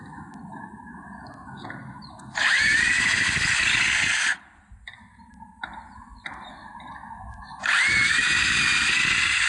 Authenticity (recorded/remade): recorded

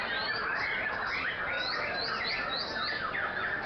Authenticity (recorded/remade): recorded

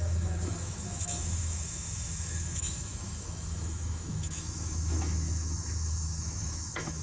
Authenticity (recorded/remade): remade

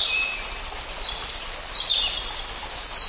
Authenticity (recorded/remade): recorded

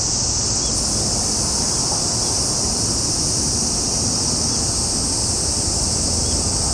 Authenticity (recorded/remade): recorded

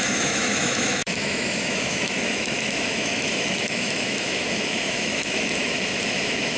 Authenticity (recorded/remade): remade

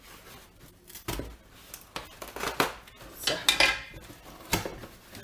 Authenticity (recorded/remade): recorded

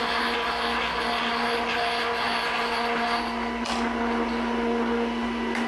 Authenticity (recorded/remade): recorded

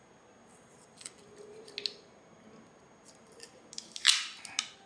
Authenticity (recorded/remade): recorded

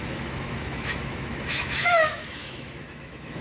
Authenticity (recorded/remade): remade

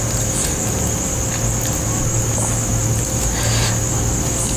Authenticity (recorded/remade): recorded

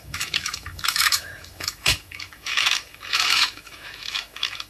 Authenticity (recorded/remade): remade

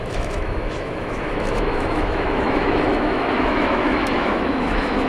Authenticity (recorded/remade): remade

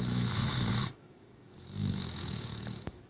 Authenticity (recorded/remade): remade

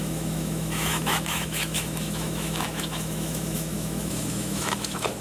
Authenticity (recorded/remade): remade